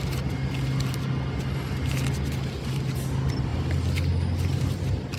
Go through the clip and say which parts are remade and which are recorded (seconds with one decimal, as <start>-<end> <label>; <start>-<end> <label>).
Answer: 0.0-5.2 recorded